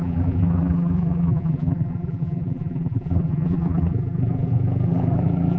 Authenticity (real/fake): fake